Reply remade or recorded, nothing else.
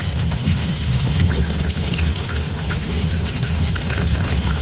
remade